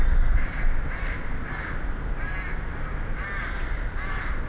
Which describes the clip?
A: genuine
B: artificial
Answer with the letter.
A